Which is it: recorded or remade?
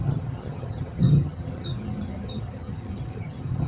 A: remade